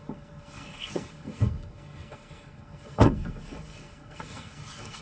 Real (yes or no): no